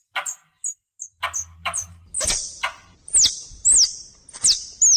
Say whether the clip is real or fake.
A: real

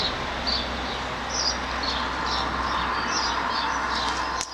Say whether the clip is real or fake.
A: real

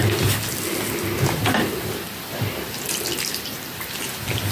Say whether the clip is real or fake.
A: real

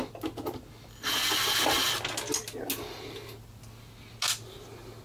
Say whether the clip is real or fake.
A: real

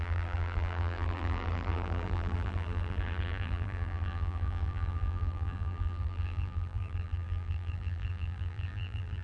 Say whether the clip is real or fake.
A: fake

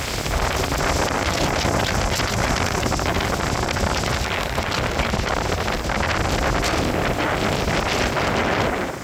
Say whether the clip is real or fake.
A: real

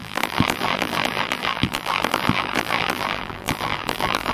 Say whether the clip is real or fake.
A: fake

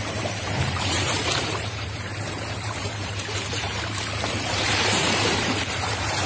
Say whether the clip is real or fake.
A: fake